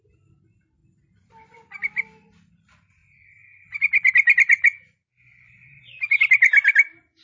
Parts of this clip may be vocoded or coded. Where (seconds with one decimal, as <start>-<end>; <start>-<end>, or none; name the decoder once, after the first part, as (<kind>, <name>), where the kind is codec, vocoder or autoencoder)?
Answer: none